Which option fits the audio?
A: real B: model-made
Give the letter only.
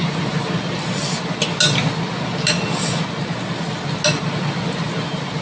A